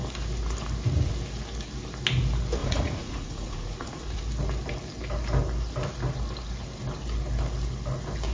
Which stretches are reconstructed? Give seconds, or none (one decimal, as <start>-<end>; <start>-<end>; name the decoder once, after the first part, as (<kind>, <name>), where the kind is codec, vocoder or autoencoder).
2.6-4.2 (vocoder, Vocos)